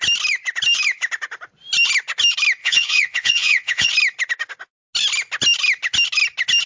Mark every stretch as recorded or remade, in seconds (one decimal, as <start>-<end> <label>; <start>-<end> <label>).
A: 0.0-2.6 recorded; 2.6-3.9 remade; 3.9-6.7 recorded